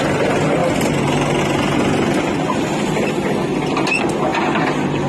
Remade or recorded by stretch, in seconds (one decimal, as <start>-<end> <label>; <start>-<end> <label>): 0.0-5.1 recorded

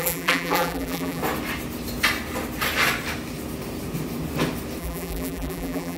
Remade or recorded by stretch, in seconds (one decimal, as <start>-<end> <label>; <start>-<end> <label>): 0.0-1.2 remade; 1.2-4.8 recorded; 4.8-6.0 remade

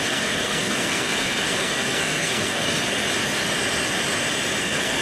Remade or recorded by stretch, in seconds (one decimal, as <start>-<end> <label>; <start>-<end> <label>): 0.0-2.8 remade; 2.8-4.6 recorded; 4.6-5.0 remade

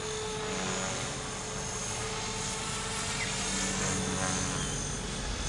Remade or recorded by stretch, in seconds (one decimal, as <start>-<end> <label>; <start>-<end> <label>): 0.0-5.5 recorded

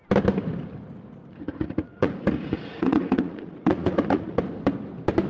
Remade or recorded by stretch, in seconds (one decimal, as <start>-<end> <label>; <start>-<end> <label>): 0.0-1.2 recorded; 1.2-4.4 remade; 4.4-5.3 recorded

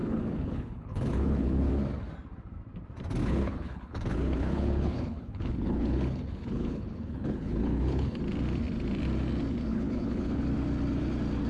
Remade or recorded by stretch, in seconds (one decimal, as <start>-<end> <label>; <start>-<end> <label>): 0.0-1.7 remade; 1.7-3.2 recorded; 3.2-8.2 remade; 8.2-9.7 recorded; 9.7-10.4 remade; 10.4-11.5 recorded

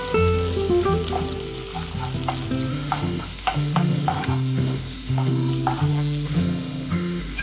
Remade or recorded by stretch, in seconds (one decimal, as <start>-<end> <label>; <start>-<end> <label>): 0.0-2.7 recorded; 2.7-5.5 remade; 5.5-5.9 recorded; 5.9-7.4 remade

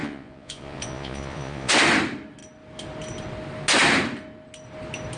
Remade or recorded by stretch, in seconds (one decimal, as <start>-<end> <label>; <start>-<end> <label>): 0.0-1.7 remade; 1.7-5.2 recorded